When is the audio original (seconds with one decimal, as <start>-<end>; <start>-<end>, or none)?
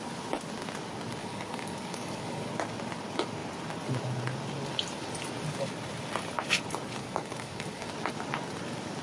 0.0-1.2; 2.5-7.0; 7.9-9.0